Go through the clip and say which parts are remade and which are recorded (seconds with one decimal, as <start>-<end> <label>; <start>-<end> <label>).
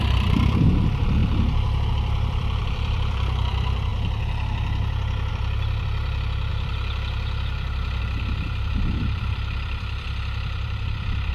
0.0-3.9 remade; 3.9-5.3 recorded; 5.3-11.3 remade